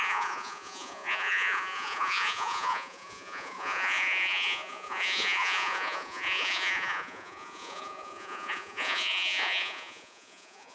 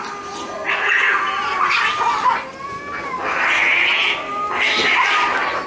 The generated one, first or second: first